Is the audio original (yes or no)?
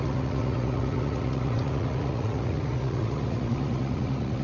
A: no